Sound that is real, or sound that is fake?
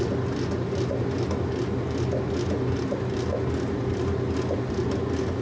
real